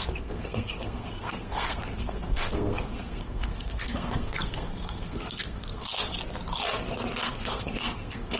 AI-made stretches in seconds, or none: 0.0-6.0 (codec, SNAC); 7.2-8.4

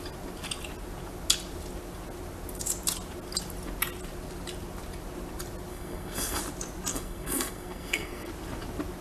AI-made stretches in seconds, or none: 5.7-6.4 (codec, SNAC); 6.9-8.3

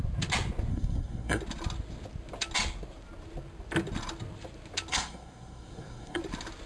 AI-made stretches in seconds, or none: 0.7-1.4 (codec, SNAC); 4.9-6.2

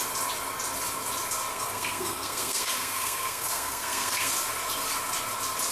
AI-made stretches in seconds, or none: 1.5-4.3 (codec, SNAC)

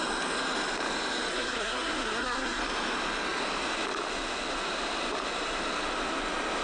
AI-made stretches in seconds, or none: 1.3-2.6 (codec, SNAC)

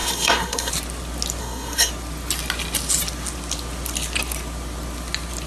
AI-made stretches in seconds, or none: 0.0-0.7 (codec, SNAC); 1.4-1.9

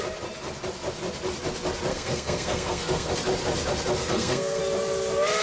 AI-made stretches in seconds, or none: 1.9-3.1 (codec, SNAC); 4.0-4.6